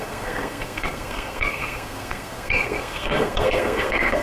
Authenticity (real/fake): fake